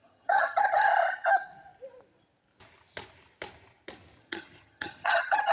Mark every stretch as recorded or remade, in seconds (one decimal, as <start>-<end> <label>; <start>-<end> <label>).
0.0-0.9 remade; 0.9-4.2 recorded; 4.2-5.5 remade